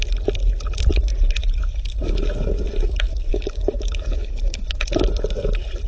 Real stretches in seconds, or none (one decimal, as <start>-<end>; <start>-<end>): 0.0-3.3; 4.9-5.9

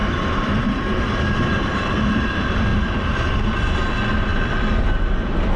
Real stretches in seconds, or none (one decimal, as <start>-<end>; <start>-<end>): 2.0-2.7; 3.9-5.6

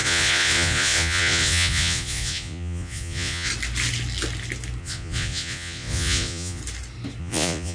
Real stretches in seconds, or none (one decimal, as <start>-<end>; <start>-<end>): 3.5-4.8; 6.6-7.2

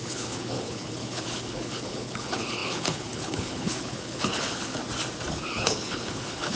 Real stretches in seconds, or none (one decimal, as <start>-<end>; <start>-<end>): 4.8-5.3

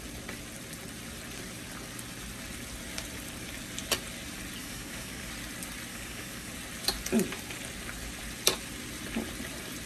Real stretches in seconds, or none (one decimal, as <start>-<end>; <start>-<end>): 0.0-4.6; 5.3-5.9; 6.5-9.9